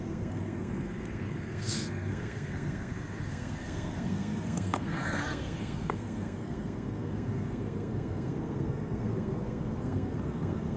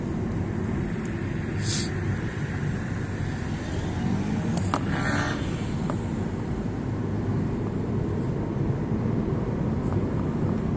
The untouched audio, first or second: second